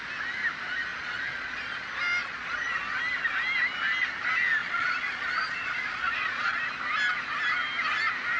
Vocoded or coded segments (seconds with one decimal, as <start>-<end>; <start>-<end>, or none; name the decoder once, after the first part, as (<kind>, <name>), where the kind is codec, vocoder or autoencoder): 0.9-1.6 (vocoder, Vocos); 2.2-2.8; 4.6-6.6